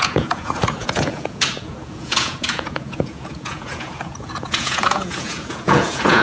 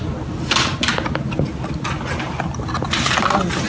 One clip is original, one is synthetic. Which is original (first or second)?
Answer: second